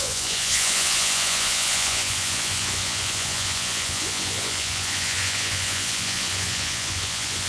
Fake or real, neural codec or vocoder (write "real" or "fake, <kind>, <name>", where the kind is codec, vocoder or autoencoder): fake, vocoder, Vocos